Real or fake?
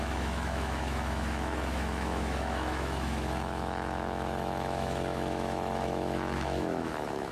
fake